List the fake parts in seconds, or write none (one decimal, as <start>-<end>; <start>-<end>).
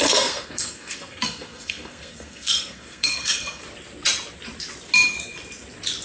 0.0-3.6